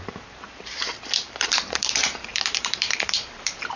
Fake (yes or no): yes